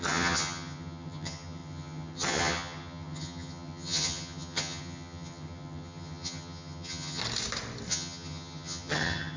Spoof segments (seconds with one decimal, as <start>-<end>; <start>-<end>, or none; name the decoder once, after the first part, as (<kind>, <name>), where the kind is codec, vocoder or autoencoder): 0.0-7.2 (vocoder, HiFi-GAN); 7.9-9.4